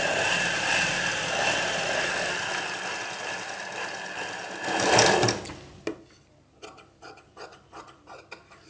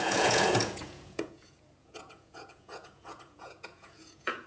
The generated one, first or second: second